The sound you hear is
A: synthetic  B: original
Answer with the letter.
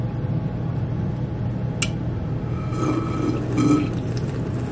B